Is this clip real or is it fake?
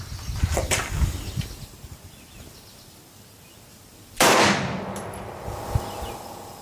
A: real